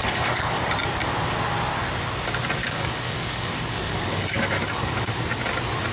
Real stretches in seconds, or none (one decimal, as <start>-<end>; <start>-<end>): 0.7-2.6; 5.1-5.9